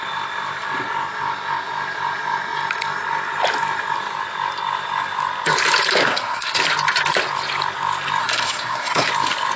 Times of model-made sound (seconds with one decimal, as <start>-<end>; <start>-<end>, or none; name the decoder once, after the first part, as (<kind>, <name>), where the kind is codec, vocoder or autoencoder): 6.0-6.6 (codec, SNAC); 8.2-9.1